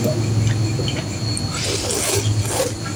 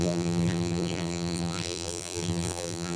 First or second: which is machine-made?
second